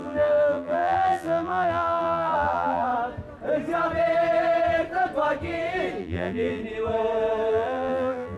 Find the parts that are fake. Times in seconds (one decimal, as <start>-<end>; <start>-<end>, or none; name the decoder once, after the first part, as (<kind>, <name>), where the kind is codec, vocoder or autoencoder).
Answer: 0.0-2.9 (vocoder, BigVGAN v2); 6.0-6.6; 7.5-8.4